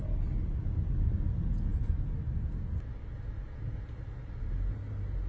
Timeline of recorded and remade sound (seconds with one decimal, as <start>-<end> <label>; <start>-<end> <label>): 0.0-5.3 recorded